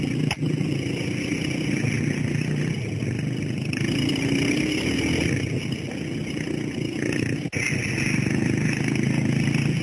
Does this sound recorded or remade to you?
recorded